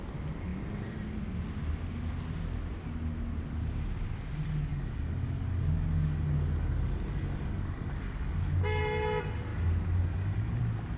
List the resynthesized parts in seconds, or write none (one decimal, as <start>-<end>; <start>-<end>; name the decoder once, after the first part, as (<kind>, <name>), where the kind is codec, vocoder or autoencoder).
4.7-8.8 (codec, DAC); 9.5-10.6